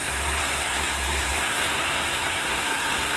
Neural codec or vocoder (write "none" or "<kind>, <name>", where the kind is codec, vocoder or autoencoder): codec, SNAC